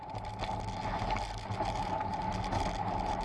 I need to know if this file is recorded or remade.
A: recorded